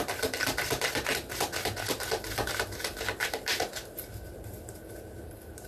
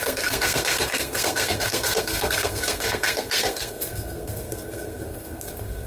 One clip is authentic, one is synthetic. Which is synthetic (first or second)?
second